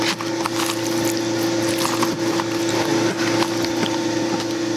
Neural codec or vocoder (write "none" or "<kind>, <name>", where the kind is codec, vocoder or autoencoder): none